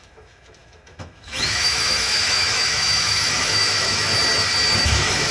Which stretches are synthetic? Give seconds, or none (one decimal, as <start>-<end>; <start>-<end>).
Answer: 0.0-4.1; 4.8-5.3